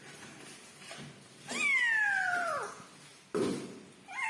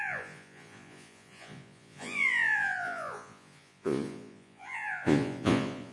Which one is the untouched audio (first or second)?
first